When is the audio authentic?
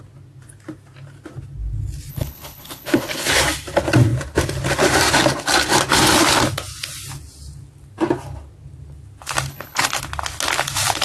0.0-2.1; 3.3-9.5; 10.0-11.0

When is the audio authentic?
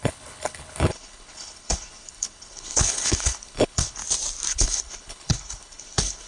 4.0-4.5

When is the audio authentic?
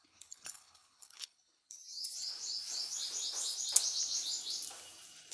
1.8-5.3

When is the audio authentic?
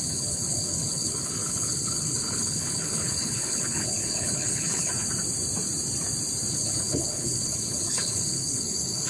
4.9-6.5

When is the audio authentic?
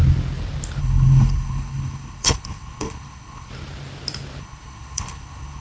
0.0-0.8; 3.5-4.4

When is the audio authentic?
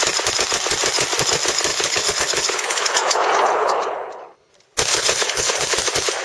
0.0-1.7; 4.5-4.9; 5.8-6.2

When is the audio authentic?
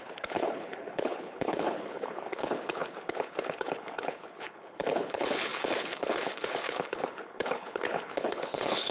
none